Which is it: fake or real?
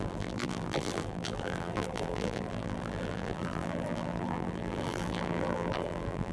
fake